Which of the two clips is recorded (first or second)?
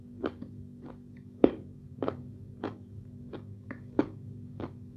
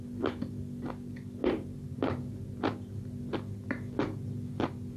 second